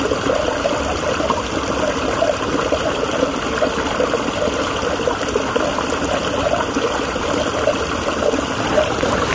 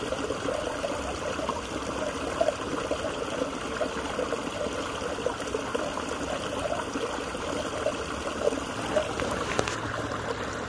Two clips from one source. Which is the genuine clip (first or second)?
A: second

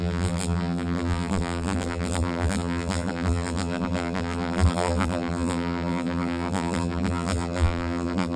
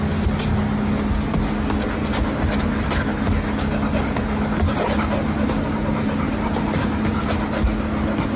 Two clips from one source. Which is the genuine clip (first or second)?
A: second